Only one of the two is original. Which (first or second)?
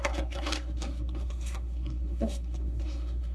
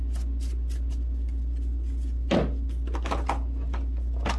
second